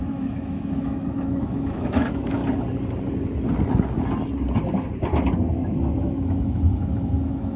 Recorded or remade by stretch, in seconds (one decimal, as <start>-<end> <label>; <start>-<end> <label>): 0.0-2.4 remade; 2.4-5.5 recorded; 5.5-7.6 remade